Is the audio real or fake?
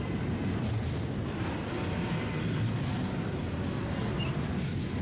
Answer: real